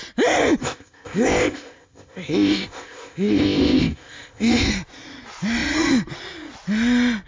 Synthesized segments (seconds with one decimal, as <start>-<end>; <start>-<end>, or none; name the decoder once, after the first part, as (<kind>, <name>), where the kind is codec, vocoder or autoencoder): 0.6-4.7 (codec, ZipCodec)